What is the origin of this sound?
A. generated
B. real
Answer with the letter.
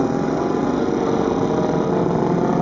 B